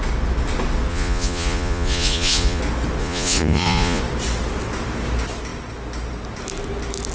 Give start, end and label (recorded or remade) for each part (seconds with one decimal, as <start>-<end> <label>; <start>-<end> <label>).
0.0-0.9 recorded; 0.9-2.6 remade; 2.6-3.0 recorded; 3.0-4.0 remade; 4.0-7.1 recorded